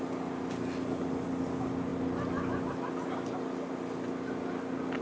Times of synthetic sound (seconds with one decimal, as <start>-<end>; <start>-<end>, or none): none

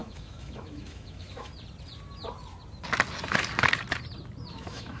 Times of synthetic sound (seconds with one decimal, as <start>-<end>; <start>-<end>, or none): 0.0-1.5; 4.5-5.0

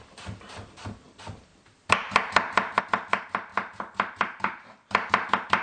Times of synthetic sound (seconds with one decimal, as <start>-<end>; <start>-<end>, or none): none

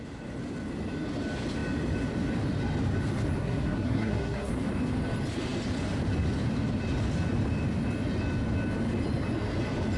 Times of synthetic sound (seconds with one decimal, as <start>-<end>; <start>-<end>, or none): 3.4-4.5

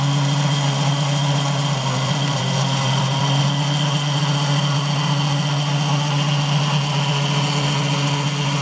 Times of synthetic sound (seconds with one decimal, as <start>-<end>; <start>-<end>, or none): 1.2-3.4